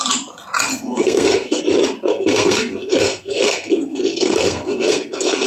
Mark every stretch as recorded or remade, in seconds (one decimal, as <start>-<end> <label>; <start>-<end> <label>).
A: 0.0-0.7 recorded; 0.7-1.6 remade; 1.6-2.1 recorded; 2.1-5.5 remade